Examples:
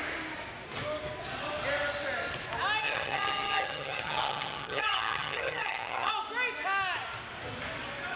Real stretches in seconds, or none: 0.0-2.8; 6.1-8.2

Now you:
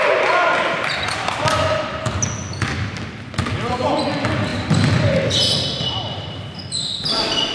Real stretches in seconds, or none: 0.0-7.5